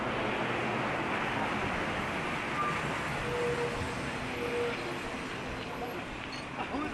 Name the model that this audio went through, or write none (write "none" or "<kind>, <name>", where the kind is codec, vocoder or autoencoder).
none